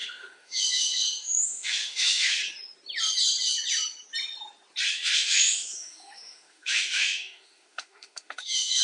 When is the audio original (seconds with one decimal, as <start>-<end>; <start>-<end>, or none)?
2.4-4.9